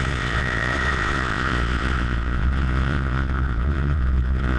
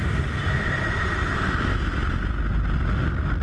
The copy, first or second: first